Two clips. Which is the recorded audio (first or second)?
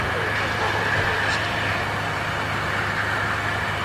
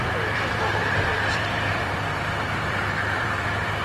first